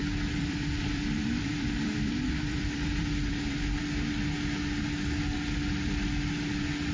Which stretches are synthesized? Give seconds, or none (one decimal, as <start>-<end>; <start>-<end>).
0.0-3.8